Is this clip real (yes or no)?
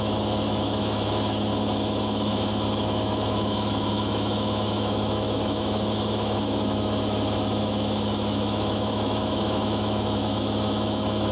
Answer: no